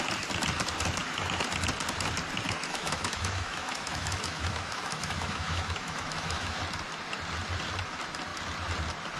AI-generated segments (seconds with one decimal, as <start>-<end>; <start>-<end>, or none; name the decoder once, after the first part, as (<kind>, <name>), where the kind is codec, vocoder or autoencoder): 2.7-6.6 (autoencoder, DAC-VAE)